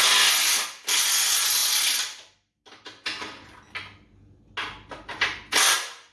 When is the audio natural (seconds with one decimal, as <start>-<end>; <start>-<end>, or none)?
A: 0.0-6.1